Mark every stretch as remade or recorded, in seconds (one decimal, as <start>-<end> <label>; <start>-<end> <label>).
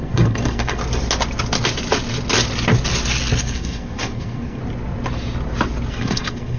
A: 0.0-0.8 remade; 0.8-3.4 recorded; 3.4-4.6 remade; 4.6-5.9 recorded; 5.9-6.6 remade